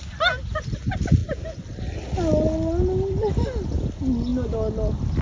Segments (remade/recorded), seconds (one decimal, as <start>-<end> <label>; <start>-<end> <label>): 0.0-5.2 recorded

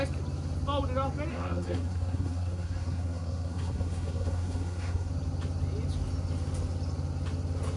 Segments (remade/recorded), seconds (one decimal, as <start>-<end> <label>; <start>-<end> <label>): 0.0-1.3 recorded; 1.3-5.1 remade; 5.1-7.8 recorded

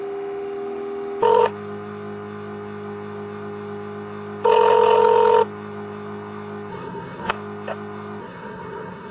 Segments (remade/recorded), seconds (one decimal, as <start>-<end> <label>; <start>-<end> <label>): 0.0-6.7 recorded; 6.7-7.3 remade; 7.3-8.2 recorded; 8.2-9.1 remade

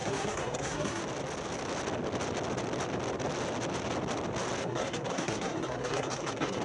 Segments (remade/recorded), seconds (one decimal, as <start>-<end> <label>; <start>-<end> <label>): 0.0-1.0 remade; 1.0-4.6 recorded; 4.6-6.6 remade

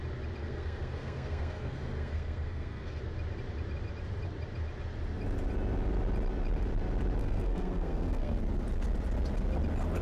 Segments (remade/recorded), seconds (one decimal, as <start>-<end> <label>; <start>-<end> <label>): 0.0-0.4 recorded; 0.4-3.0 remade; 3.0-7.2 recorded; 7.2-8.4 remade; 8.4-10.0 recorded